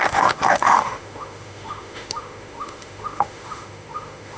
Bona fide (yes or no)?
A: no